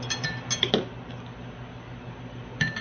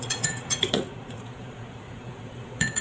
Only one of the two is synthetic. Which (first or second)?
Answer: second